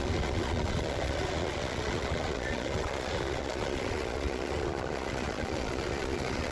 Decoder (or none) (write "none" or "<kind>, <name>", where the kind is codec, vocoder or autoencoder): vocoder, Vocos